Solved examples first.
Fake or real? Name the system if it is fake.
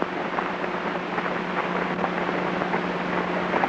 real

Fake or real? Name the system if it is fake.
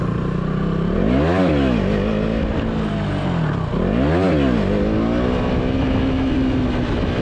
real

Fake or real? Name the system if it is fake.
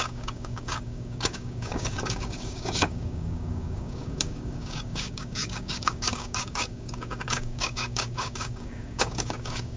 fake, codec, DAC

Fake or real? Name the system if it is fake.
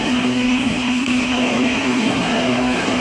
fake, codec, SNAC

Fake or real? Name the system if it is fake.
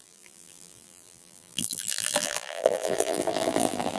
fake, vocoder, BigVGAN v2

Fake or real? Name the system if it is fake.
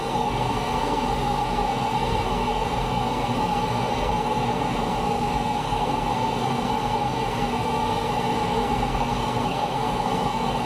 fake, codec, SNAC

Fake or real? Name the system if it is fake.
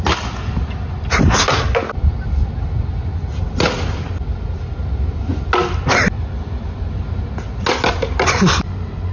real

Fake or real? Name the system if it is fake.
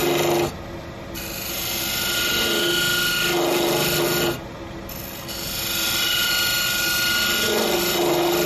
real